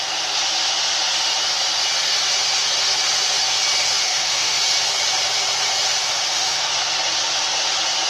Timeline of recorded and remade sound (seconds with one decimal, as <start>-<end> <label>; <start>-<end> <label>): 0.0-4.0 recorded; 4.0-4.6 remade; 4.6-6.1 recorded; 6.1-6.7 remade; 6.7-8.1 recorded